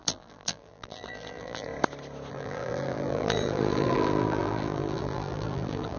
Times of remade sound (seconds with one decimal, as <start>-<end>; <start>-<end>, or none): 0.0-1.7; 2.3-6.0